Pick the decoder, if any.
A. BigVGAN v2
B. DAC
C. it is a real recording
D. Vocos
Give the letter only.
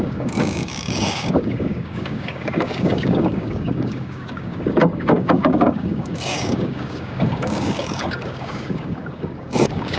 B